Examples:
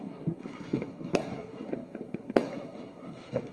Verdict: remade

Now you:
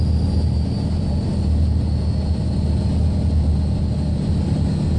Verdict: recorded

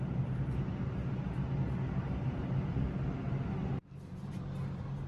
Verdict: recorded